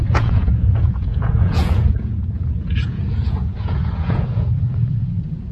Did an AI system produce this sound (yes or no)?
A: yes